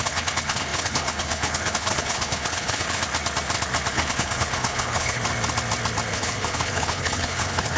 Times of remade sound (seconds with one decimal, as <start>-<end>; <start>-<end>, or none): 0.0-3.0; 3.9-5.2; 6.1-7.8